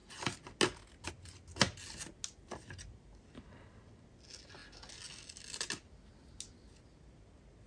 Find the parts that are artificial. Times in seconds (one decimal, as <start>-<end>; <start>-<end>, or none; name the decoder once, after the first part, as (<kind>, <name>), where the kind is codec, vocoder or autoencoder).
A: none